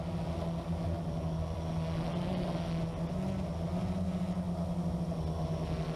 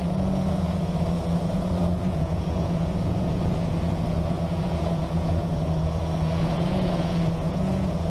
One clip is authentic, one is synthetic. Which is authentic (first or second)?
first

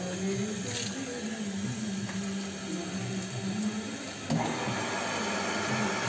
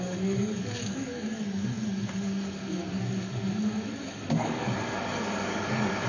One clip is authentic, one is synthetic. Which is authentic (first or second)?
first